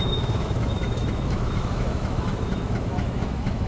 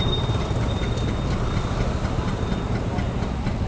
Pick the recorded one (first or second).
second